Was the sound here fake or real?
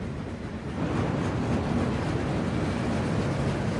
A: real